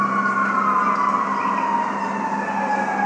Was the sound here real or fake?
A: real